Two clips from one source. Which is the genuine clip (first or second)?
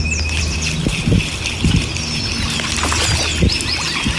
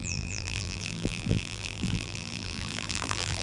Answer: first